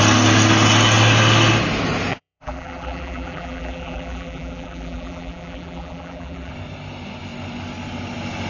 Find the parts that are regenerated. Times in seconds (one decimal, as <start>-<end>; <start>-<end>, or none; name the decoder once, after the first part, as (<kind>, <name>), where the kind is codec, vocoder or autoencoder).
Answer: 2.1-6.5 (vocoder, BigVGAN v2)